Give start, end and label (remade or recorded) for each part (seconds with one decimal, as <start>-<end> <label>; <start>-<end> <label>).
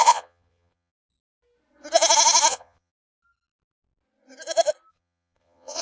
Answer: 0.0-0.9 remade; 0.9-2.5 recorded; 2.5-2.9 remade; 2.9-4.9 recorded; 4.9-5.8 remade